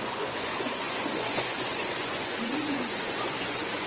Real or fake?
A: fake